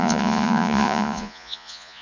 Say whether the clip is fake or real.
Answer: fake